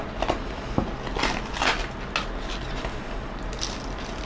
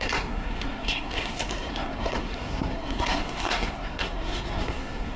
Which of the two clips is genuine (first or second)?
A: first